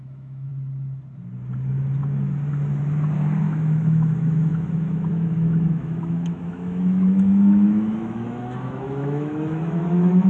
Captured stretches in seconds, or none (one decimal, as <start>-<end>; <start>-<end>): 0.5-3.4